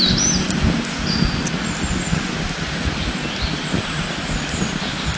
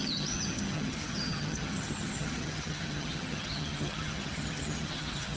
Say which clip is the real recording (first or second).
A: first